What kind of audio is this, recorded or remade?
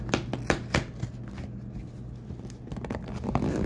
recorded